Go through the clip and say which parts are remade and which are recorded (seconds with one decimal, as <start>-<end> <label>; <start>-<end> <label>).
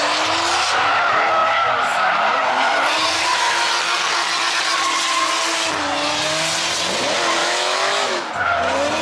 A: 0.0-7.4 recorded; 7.4-8.3 remade; 8.3-9.0 recorded